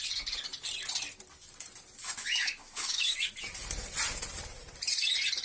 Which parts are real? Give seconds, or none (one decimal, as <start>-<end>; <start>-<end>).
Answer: 0.0-2.0; 3.3-5.4